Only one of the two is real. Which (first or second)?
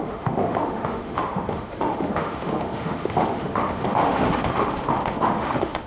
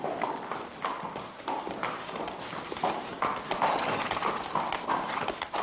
second